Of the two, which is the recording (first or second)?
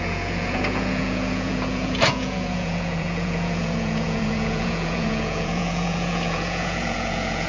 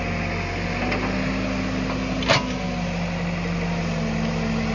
second